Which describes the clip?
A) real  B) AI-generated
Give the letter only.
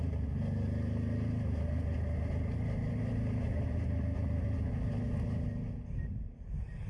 A